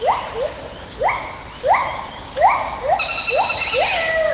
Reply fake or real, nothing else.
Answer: real